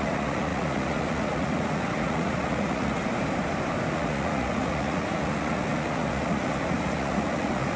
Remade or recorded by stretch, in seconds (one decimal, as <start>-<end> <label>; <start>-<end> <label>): 0.0-3.0 remade; 3.0-3.9 recorded; 3.9-7.8 remade